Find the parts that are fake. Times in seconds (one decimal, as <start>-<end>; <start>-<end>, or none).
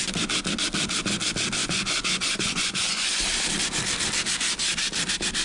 1.6-3.2